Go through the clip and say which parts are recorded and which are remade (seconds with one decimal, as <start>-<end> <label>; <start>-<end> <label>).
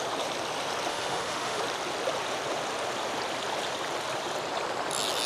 0.0-0.9 recorded; 0.9-1.6 remade; 1.6-5.3 recorded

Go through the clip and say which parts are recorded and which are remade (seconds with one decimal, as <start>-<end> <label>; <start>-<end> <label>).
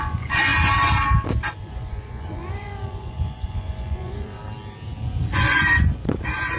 0.0-0.5 remade; 0.5-1.6 recorded; 1.6-4.4 remade; 4.4-5.3 recorded; 5.3-6.6 remade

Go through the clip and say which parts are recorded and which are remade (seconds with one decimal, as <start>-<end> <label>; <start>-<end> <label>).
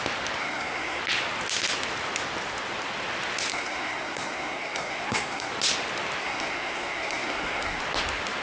0.0-0.4 recorded; 0.4-1.0 remade; 1.0-3.5 recorded; 3.5-5.5 remade; 5.5-6.2 recorded; 6.2-7.8 remade; 7.8-8.4 recorded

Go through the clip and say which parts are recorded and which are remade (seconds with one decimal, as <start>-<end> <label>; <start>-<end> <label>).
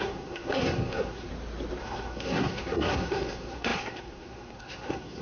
0.0-1.3 remade; 1.3-1.8 recorded; 1.8-5.2 remade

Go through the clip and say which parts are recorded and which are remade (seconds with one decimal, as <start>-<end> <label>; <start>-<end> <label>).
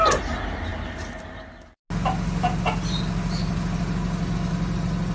0.0-5.1 recorded